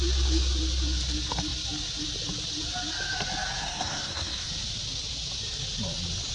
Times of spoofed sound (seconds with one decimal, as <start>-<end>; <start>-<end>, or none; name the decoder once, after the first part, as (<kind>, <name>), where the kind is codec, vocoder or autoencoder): 3.6-4.5 (codec, SNAC)